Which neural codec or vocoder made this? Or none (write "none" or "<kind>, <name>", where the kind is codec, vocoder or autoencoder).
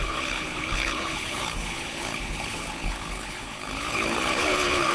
codec, HILCodec